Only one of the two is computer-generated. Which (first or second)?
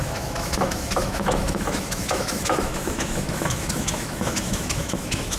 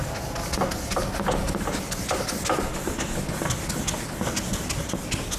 first